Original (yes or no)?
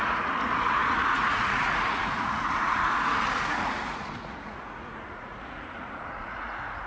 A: no